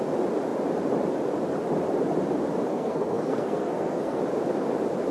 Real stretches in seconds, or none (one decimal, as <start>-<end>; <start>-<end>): 0.0-2.7; 4.2-5.1

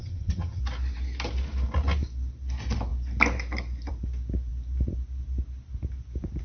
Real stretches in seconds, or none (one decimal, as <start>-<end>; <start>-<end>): 0.6-6.4

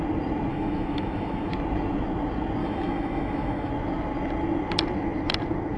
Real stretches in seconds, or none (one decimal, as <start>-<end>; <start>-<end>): 0.0-0.5; 1.5-2.6; 3.7-5.8

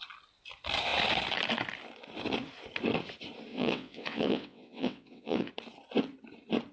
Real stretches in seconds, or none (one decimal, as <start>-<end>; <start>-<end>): 0.0-3.5; 5.5-6.7